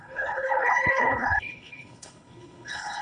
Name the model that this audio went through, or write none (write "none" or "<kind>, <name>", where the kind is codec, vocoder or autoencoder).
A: codec, HILCodec